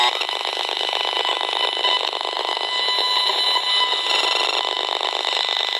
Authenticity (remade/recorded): recorded